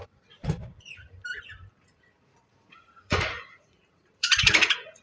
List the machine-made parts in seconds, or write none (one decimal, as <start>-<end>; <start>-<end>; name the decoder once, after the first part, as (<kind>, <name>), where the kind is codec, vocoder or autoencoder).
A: 1.9-5.0 (vocoder, Vocos)